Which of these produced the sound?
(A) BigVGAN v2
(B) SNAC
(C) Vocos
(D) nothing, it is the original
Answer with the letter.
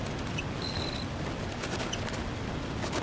D